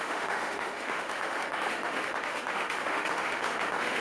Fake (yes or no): yes